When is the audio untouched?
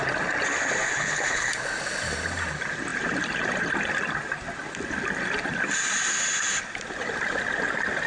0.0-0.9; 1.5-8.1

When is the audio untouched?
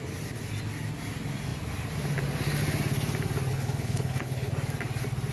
0.0-3.5; 4.5-5.3